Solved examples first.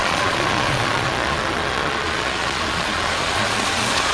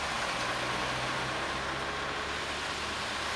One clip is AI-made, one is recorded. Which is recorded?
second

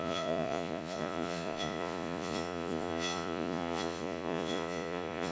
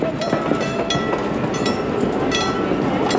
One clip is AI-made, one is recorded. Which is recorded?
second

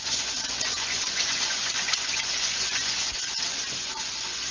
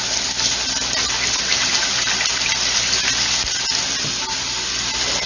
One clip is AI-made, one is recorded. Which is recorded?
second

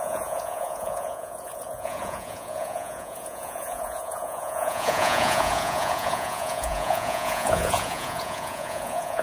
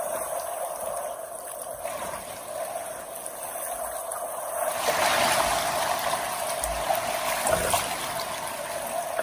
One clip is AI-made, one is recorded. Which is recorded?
second